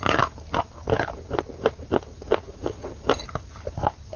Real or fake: real